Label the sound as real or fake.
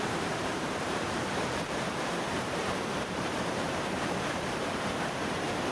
fake